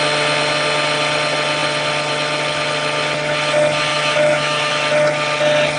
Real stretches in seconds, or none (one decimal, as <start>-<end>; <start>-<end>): 0.0-3.9; 4.7-5.8